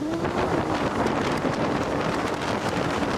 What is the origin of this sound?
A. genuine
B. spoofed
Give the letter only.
B